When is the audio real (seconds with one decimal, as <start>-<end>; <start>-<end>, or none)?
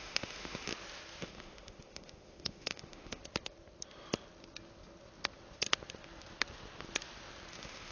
0.7-1.2; 3.2-7.5